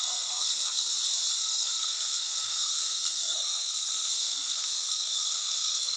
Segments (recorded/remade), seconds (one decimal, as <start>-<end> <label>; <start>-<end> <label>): 0.0-0.9 remade; 0.9-1.4 recorded; 1.4-6.0 remade